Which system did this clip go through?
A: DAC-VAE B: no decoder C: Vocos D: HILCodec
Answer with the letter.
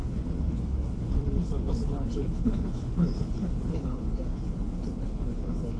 D